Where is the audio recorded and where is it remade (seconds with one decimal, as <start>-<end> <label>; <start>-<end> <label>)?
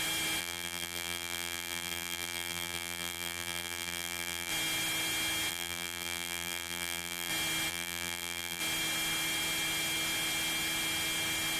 0.0-0.4 recorded; 0.4-4.5 remade; 4.5-5.5 recorded; 5.5-7.3 remade; 7.3-7.7 recorded; 7.7-8.6 remade; 8.6-11.6 recorded